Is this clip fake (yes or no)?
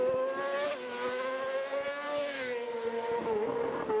no